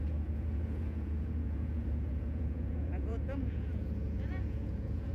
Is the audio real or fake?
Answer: fake